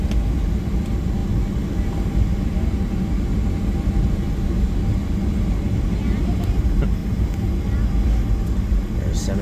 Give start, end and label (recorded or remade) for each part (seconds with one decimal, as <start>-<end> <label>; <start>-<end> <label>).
0.0-9.4 recorded